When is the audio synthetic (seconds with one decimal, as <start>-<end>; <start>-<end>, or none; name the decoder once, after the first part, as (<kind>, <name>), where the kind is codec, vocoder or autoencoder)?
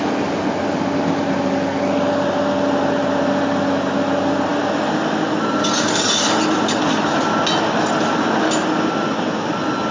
none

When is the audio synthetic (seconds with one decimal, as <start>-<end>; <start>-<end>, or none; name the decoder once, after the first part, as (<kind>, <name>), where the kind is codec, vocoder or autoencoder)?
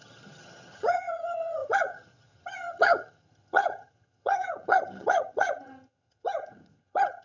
0.0-7.2 (vocoder, HiFi-GAN)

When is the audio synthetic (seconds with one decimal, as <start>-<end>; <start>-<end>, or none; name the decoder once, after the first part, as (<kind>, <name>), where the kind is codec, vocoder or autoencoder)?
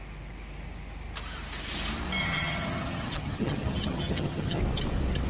2.2-4.6 (vocoder, HiFi-GAN)